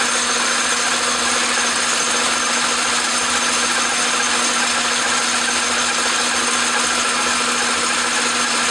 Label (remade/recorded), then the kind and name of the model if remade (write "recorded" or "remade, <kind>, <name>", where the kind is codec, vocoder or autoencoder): recorded